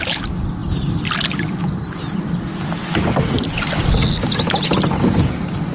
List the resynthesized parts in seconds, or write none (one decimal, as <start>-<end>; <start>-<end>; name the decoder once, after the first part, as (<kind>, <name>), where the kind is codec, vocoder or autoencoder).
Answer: none